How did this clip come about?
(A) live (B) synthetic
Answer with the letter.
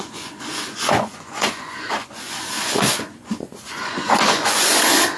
B